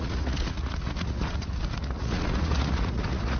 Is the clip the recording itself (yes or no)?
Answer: no